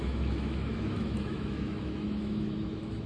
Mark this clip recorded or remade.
remade